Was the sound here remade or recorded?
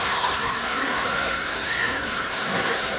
remade